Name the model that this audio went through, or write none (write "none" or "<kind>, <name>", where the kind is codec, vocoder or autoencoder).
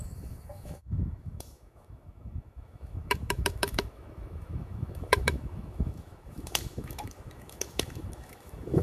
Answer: autoencoder, DAC-VAE